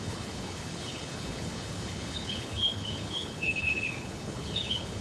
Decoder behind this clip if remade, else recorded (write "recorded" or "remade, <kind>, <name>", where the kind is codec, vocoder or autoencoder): remade, codec, HILCodec